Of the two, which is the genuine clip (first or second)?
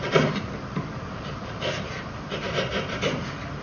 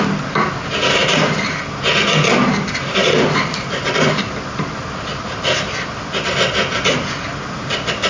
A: second